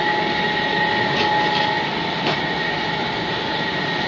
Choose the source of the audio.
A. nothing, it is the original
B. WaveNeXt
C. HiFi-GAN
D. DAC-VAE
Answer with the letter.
A